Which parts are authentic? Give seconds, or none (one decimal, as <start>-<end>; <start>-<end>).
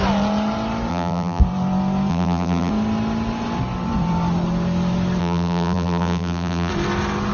0.0-0.9; 1.4-2.1; 2.7-5.2; 6.7-7.3